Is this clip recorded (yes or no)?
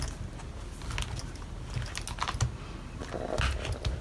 yes